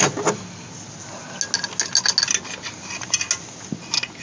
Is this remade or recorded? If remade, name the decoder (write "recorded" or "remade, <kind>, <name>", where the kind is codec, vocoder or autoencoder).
recorded